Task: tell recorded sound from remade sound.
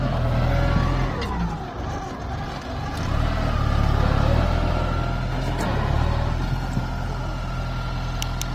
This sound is recorded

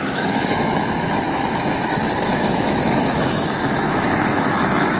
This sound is remade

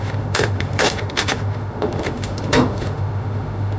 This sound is remade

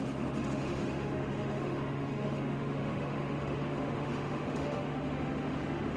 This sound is remade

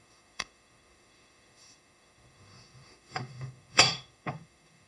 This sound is remade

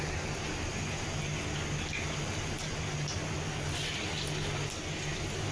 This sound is recorded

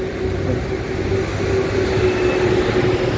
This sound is recorded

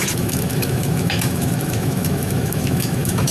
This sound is remade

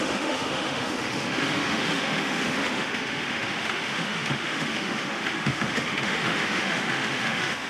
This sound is remade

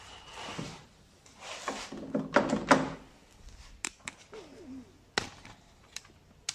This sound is recorded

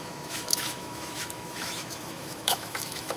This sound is remade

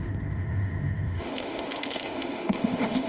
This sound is remade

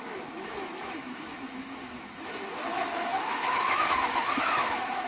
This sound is remade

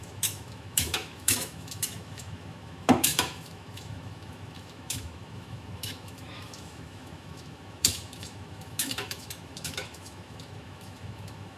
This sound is remade